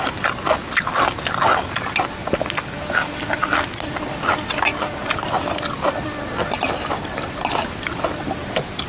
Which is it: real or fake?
real